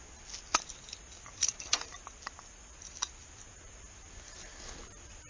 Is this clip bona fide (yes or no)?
yes